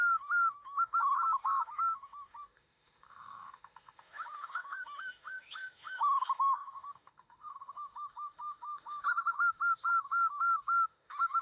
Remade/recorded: remade